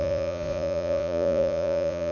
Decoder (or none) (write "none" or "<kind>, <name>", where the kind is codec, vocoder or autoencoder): vocoder, Vocos